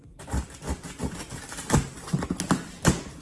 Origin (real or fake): real